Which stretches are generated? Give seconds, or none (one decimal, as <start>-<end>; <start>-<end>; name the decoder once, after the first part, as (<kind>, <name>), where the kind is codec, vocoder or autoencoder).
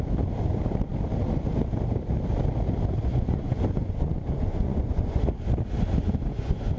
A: 3.1-5.2 (vocoder, Vocos); 6.0-6.8